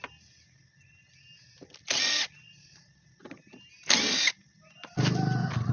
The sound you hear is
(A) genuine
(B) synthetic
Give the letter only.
A